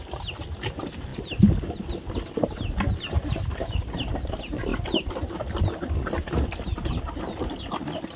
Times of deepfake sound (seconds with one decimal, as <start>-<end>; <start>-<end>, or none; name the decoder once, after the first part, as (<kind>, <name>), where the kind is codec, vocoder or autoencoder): none